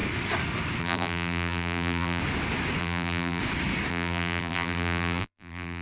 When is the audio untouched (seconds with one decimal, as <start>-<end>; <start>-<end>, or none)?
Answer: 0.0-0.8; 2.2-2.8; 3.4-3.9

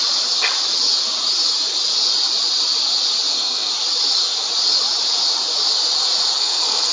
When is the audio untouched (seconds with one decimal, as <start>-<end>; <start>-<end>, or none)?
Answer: 0.0-3.3; 3.7-6.4

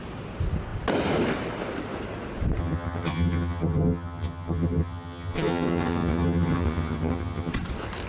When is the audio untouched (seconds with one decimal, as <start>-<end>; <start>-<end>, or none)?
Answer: 0.0-2.6; 7.5-8.1

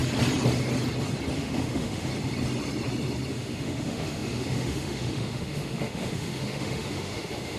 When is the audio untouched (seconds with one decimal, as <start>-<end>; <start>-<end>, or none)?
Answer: 0.0-1.4; 2.1-3.3

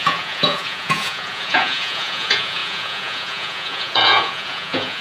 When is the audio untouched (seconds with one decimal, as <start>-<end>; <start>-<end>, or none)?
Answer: none

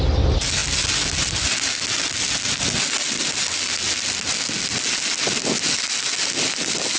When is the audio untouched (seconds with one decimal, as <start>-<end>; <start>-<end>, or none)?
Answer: 0.0-7.0

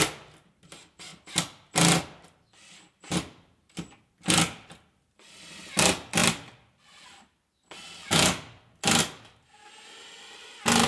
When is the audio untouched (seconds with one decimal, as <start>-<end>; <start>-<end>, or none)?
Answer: 0.0-10.9

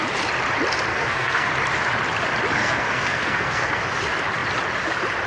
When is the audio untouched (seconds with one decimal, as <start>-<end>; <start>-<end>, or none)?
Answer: 0.0-0.9; 1.5-2.6; 3.8-5.3